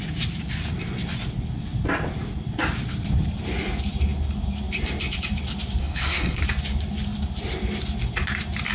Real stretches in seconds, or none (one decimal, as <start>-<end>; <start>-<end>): 0.0-5.8; 6.4-8.7